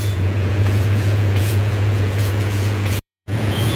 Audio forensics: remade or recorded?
remade